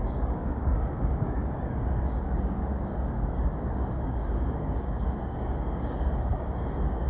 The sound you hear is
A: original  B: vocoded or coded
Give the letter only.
B